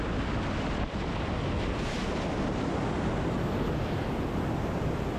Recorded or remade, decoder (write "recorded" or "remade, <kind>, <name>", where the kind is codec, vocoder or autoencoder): recorded